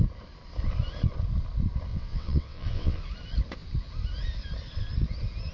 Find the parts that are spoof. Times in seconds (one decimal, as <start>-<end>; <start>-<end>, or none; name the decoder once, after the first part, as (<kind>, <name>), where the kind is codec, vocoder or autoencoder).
1.9-3.0 (vocoder, WaveNeXt)